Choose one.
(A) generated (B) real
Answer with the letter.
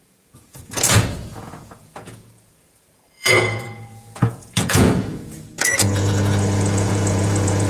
A